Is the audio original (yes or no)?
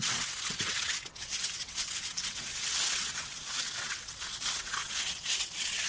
no